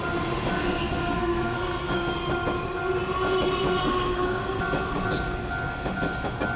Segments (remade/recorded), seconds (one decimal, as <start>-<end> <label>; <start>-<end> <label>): 0.0-0.6 recorded; 0.6-2.1 remade; 2.1-3.8 recorded; 3.8-4.6 remade; 4.6-6.6 recorded